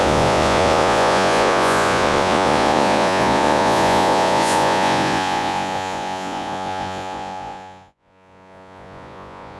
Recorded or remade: remade